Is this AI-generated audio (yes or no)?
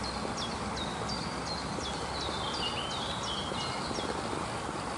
no